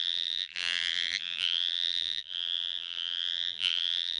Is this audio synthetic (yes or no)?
yes